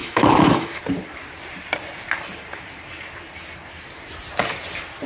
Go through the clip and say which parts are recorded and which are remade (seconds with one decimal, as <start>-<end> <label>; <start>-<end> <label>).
0.0-0.8 remade; 0.8-5.1 recorded